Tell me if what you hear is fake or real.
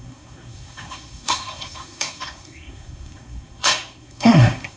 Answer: fake